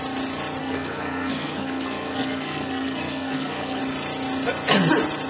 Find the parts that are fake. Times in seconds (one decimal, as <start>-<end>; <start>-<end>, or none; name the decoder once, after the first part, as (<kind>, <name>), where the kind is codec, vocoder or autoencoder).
0.6-3.8 (codec, SNAC)